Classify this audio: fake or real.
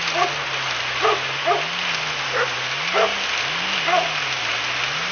real